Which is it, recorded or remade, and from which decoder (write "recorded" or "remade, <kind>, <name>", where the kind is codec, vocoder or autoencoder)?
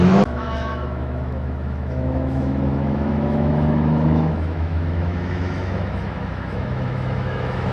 remade, autoencoder, DAC-VAE